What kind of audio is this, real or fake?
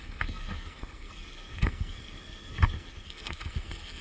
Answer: fake